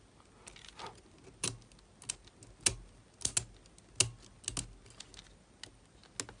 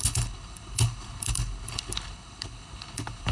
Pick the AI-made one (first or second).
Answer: second